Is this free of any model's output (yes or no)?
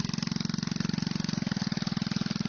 yes